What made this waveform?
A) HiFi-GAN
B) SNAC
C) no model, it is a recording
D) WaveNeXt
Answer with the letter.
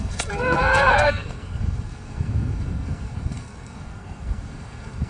B